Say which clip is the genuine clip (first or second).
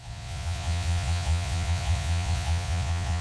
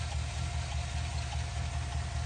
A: second